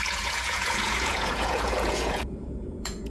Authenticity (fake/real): fake